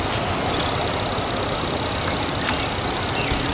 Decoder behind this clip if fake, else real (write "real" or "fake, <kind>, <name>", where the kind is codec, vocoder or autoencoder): real